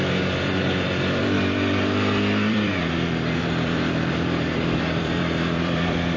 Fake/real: fake